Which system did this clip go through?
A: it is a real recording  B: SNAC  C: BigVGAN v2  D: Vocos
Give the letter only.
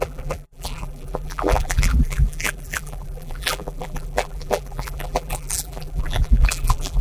C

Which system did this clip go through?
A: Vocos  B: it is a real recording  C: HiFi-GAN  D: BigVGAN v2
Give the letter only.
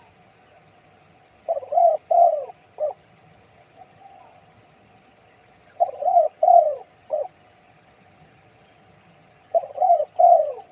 C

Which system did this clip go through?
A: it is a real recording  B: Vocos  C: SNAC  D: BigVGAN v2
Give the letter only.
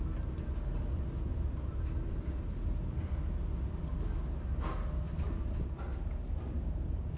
A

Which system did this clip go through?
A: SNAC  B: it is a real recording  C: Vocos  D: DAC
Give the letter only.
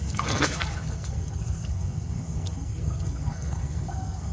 A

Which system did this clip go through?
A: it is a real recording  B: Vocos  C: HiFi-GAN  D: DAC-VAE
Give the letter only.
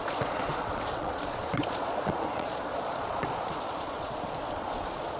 B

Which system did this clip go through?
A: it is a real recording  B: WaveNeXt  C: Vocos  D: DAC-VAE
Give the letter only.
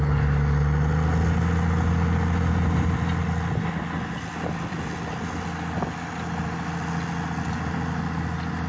A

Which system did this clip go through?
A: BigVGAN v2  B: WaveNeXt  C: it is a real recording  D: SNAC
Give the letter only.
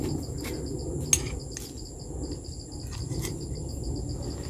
C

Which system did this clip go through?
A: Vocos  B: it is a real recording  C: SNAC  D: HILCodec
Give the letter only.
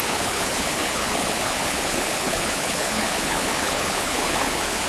D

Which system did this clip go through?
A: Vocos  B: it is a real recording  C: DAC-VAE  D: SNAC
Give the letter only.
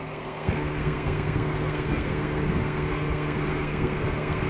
D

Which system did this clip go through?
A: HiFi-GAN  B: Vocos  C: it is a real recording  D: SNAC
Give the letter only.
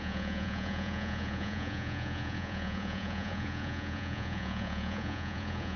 B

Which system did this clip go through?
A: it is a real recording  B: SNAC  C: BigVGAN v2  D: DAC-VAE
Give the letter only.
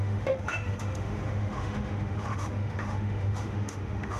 D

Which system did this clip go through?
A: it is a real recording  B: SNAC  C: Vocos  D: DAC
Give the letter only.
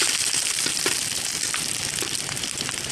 A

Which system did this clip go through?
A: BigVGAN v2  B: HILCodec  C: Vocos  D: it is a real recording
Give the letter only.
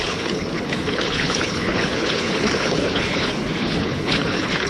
B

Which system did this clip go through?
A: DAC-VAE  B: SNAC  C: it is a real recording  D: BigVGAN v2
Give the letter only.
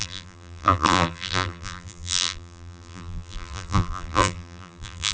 D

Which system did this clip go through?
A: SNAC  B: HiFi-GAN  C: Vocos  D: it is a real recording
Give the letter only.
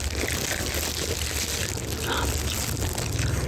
D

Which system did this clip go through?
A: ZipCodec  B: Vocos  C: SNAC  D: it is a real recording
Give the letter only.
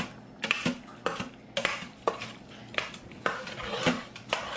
D